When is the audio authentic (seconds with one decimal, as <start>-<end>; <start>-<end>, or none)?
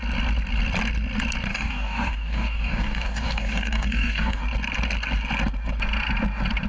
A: 0.0-1.5; 4.4-6.7